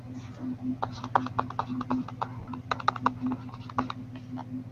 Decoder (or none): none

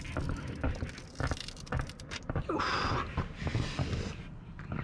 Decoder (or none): none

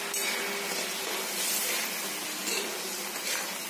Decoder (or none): none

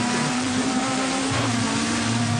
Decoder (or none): vocoder, BigVGAN v2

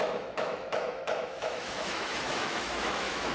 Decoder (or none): autoencoder, DAC-VAE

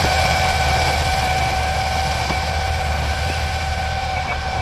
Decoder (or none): vocoder, BigVGAN v2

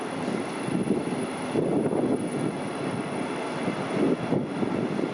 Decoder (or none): none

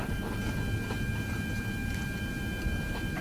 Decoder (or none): none